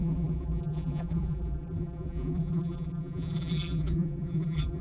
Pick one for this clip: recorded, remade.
remade